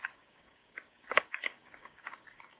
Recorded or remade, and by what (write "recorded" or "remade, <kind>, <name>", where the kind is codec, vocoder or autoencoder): remade, codec, DAC